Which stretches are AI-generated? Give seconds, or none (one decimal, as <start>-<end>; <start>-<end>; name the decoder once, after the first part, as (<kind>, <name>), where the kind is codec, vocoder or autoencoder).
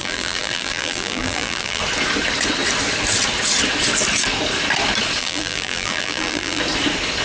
0.0-1.8 (vocoder, BigVGAN v2); 5.2-6.6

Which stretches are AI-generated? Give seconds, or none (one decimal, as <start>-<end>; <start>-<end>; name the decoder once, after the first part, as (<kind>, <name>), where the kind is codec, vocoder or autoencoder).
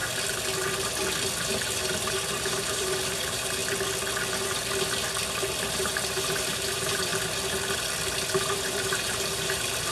2.1-3.6 (vocoder, BigVGAN v2); 5.6-7.1; 8.4-9.9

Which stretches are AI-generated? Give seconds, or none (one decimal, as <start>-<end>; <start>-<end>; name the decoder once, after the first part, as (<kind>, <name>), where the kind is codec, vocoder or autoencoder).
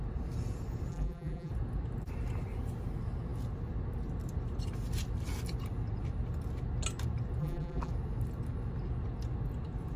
0.9-1.5 (vocoder, BigVGAN v2); 7.4-7.9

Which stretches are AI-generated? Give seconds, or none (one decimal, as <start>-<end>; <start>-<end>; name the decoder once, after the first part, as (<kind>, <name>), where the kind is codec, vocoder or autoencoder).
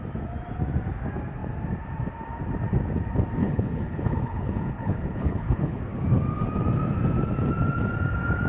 3.4-5.8 (codec, HILCodec)